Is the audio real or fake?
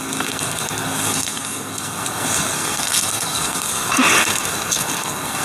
fake